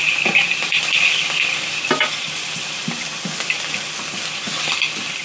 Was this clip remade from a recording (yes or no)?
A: no